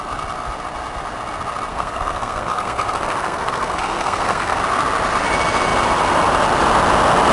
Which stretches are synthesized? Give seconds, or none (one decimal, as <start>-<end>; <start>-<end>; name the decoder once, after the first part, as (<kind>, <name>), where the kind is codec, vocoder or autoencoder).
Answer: 1.7-4.6 (codec, SNAC)